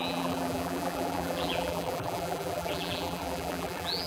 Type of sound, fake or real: fake